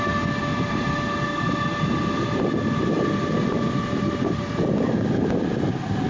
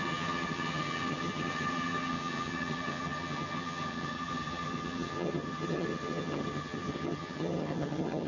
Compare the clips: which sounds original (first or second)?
first